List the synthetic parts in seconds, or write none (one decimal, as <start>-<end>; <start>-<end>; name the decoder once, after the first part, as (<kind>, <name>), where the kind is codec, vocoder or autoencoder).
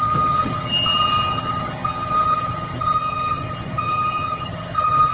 0.0-5.1 (vocoder, HiFi-GAN)